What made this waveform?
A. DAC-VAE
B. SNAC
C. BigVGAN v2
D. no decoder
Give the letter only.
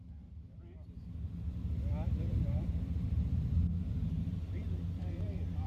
C